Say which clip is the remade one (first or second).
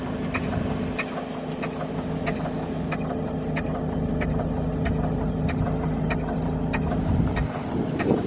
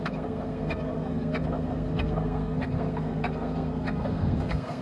second